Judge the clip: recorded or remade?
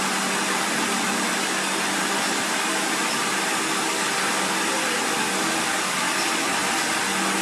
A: recorded